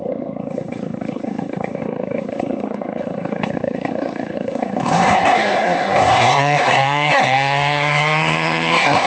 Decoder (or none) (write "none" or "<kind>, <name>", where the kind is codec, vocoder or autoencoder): codec, SNAC